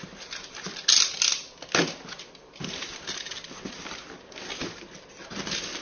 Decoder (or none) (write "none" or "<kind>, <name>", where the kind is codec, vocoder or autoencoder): none